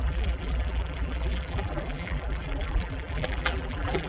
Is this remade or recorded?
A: remade